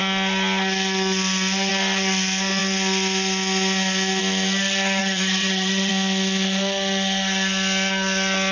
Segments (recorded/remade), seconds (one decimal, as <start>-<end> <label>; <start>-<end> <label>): 0.0-5.0 recorded; 5.0-5.9 remade; 5.9-8.5 recorded